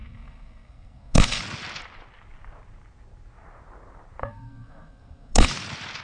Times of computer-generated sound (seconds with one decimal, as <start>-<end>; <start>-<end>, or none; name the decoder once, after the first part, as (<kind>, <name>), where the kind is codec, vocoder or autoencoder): 0.0-1.4 (codec, SNAC); 4.2-5.5